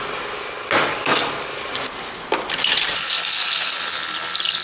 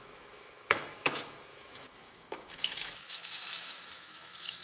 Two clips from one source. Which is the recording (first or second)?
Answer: first